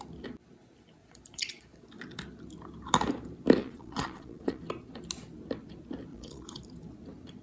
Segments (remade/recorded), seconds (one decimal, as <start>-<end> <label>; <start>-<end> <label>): 0.0-1.0 recorded; 1.0-1.9 remade; 1.9-3.6 recorded; 3.6-4.6 remade; 4.6-6.1 recorded; 6.1-6.6 remade; 6.6-7.4 recorded